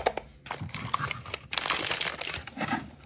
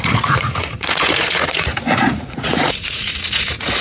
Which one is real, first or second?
first